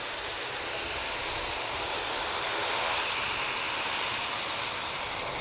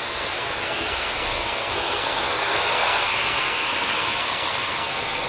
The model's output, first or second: second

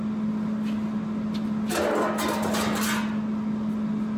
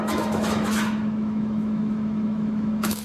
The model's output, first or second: second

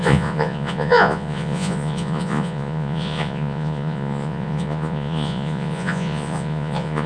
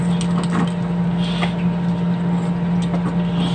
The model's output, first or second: first